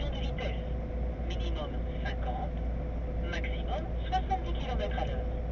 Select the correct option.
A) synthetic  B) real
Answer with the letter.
B